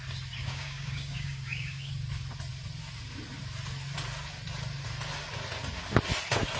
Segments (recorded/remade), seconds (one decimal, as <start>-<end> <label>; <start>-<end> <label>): 0.0-0.4 recorded; 0.4-1.9 remade; 1.9-6.6 recorded